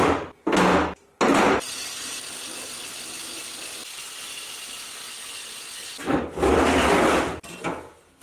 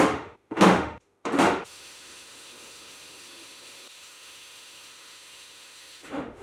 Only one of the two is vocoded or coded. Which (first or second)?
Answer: second